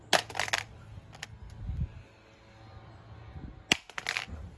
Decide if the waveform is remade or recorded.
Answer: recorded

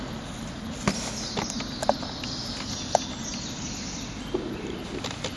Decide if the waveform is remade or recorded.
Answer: recorded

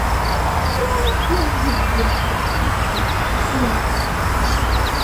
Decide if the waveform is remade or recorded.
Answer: recorded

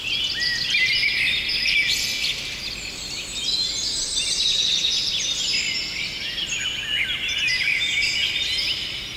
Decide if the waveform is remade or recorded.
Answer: recorded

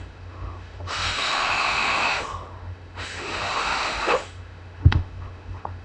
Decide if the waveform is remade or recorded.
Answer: remade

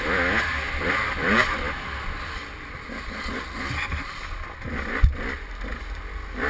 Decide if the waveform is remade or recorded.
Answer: recorded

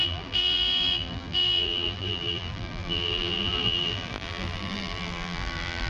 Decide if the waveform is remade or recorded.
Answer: remade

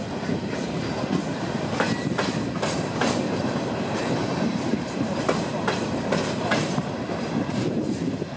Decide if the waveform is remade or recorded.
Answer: remade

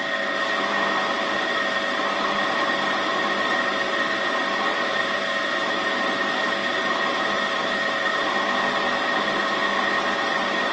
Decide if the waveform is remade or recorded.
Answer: recorded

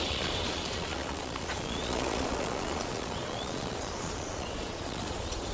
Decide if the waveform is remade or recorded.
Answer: remade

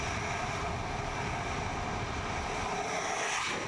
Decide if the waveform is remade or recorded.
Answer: recorded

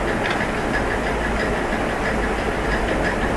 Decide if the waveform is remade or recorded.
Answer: recorded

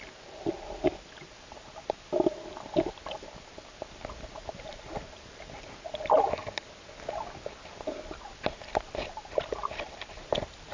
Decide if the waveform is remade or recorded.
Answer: recorded